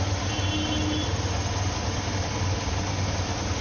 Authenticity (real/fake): real